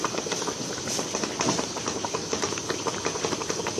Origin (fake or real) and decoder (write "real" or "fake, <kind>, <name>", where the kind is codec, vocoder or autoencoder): real